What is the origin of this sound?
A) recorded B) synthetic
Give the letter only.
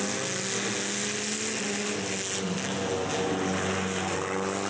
A